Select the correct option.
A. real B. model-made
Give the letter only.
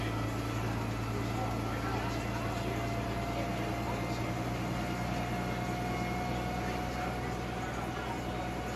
A